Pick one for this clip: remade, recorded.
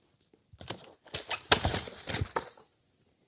recorded